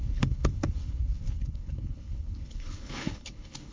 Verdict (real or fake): fake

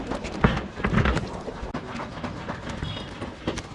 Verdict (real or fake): real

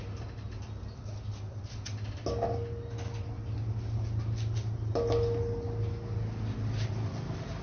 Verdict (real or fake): real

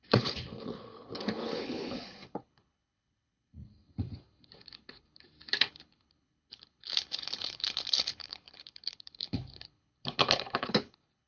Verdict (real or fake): fake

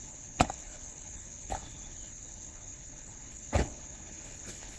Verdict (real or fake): fake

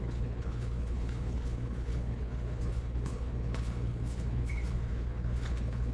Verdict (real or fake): fake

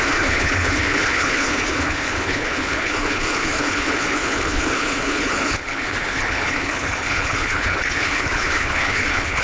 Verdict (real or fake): fake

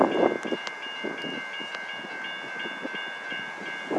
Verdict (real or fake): real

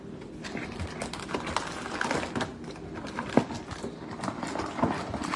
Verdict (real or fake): real